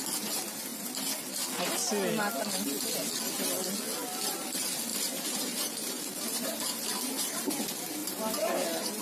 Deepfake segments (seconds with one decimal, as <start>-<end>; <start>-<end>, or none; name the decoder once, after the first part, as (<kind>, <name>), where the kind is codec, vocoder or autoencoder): 4.9-7.5 (vocoder, BigVGAN v2); 8.0-9.0